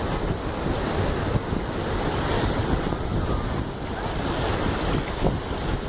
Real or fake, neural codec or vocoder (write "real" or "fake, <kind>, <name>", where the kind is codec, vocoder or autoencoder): real